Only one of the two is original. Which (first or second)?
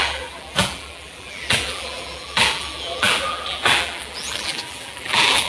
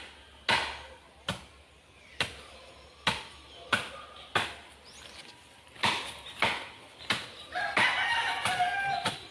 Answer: second